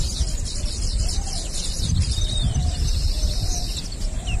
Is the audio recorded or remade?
remade